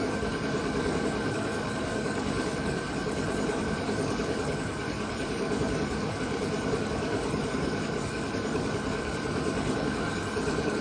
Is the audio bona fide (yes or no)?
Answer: no